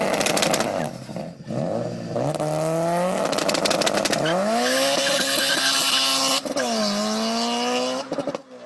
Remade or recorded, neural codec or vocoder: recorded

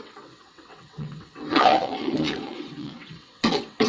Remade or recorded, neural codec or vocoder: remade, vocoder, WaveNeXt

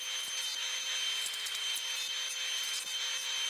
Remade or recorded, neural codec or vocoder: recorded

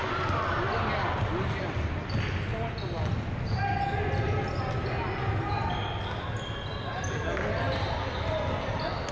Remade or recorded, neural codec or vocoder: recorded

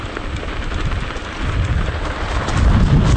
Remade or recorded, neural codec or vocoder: recorded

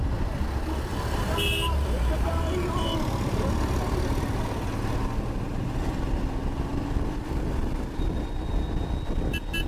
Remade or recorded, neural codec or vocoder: recorded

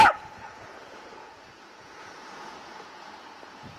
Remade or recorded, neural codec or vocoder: remade, vocoder, Vocos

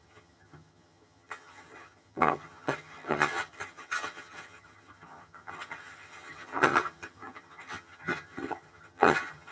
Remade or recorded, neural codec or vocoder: remade, vocoder, HiFi-GAN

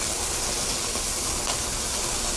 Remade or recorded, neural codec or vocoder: recorded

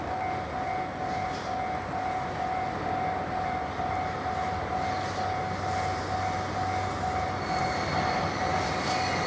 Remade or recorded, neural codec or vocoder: recorded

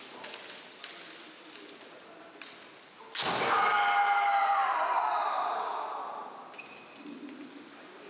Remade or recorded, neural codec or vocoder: recorded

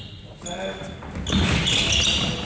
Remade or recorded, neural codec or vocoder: recorded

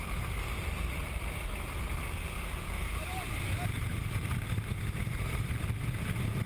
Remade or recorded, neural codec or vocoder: recorded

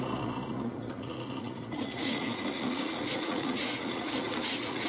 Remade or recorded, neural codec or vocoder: remade, vocoder, Vocos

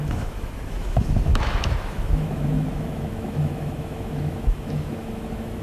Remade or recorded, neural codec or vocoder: remade, autoencoder, DAC-VAE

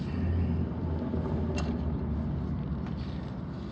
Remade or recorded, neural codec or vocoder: recorded